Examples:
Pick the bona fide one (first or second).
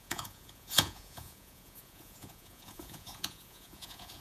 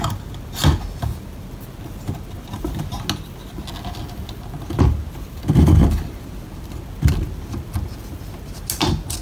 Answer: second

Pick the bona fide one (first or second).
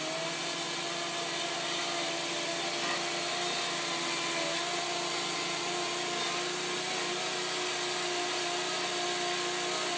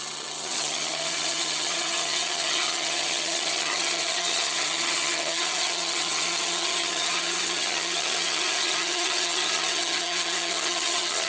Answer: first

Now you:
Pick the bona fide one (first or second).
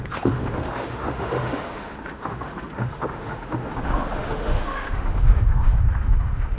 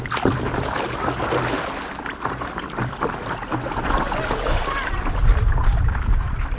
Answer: second